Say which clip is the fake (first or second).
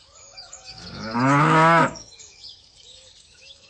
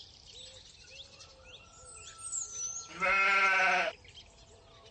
first